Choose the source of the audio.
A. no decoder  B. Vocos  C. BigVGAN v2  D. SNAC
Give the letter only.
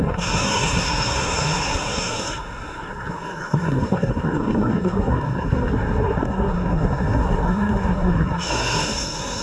D